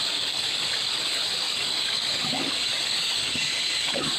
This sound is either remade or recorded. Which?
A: remade